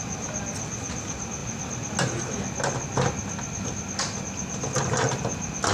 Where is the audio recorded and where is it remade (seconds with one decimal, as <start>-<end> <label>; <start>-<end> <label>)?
0.0-5.7 recorded